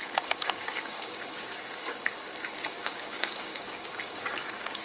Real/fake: fake